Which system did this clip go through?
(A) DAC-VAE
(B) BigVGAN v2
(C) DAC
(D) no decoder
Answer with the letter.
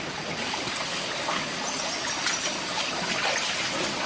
D